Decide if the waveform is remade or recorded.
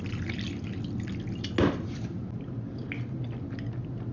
recorded